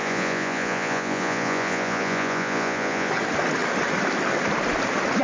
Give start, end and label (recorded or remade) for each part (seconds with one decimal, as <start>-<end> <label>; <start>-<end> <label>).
0.0-3.1 remade; 3.1-5.2 recorded